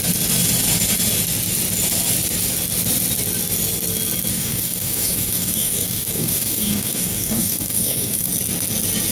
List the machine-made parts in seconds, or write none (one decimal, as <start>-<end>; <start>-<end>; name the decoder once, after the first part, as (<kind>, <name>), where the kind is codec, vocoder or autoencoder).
4.3-8.3 (codec, DAC)